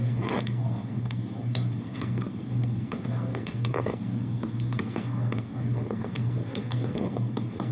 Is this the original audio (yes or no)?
no